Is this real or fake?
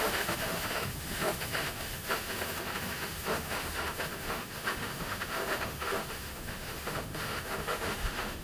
fake